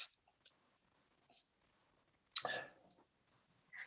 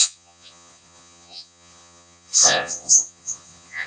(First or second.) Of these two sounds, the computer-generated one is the second